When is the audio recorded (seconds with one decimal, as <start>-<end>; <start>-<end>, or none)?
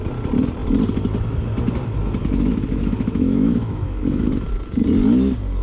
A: 0.0-2.2; 4.5-5.6